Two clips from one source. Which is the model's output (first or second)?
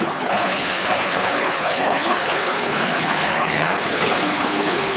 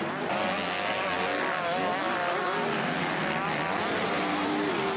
first